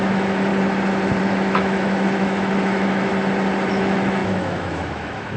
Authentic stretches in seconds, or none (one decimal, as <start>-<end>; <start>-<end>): 0.5-1.2; 3.1-3.7